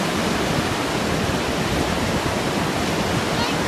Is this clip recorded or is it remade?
recorded